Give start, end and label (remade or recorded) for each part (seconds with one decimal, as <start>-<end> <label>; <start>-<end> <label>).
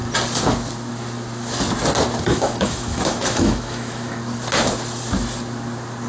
0.0-2.3 recorded; 2.3-4.2 remade; 4.2-6.1 recorded